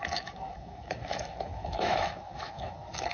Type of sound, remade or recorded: remade